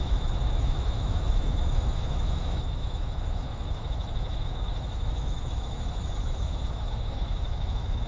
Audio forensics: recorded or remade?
remade